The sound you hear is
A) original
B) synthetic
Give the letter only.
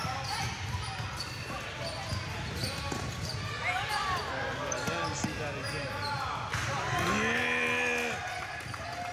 A